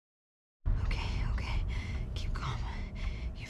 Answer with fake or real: real